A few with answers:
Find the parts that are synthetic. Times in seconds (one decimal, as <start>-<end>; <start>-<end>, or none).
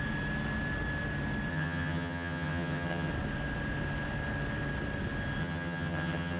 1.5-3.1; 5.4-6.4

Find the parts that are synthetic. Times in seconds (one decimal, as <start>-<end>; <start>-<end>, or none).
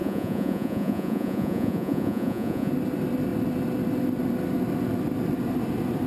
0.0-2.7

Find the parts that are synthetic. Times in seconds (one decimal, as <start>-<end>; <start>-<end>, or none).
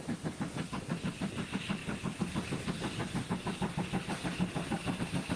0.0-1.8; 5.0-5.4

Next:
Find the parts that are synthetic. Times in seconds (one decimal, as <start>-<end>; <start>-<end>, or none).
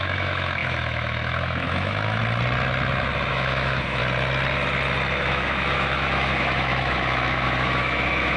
0.0-2.2; 3.3-4.0; 5.2-8.4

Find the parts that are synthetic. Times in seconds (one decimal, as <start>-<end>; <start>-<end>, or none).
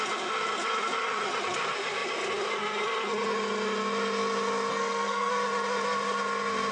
4.7-5.3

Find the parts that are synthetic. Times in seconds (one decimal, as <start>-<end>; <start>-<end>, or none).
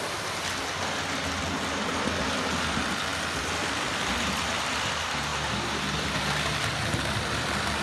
none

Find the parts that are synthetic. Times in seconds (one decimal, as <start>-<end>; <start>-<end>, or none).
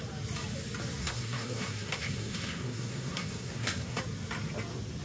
1.0-4.0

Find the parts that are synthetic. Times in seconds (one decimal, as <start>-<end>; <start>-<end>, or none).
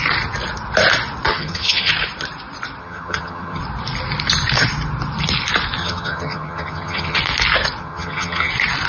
1.3-1.9; 2.8-3.6; 5.8-7.2; 7.8-8.5